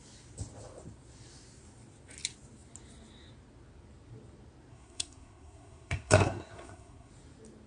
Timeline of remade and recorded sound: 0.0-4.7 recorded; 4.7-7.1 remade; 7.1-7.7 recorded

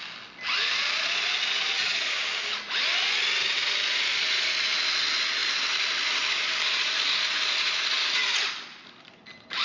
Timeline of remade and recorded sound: 0.0-5.4 recorded; 5.4-7.1 remade; 7.1-9.6 recorded